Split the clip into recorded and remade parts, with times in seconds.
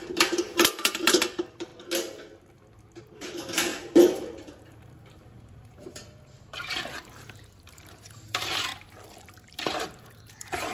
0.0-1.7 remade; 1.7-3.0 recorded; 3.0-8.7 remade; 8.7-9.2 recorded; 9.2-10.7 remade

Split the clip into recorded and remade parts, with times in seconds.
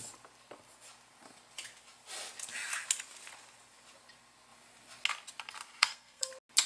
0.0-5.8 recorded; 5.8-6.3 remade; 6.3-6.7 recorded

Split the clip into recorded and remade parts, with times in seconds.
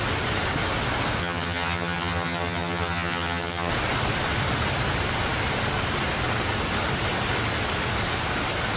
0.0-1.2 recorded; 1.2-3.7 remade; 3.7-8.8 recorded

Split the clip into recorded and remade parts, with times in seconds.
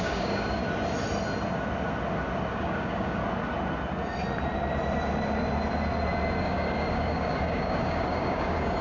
0.0-0.6 remade; 0.6-2.5 recorded; 2.5-3.2 remade; 3.2-6.4 recorded; 6.4-8.8 remade